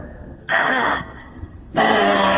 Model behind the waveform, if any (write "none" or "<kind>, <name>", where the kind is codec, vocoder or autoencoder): codec, SNAC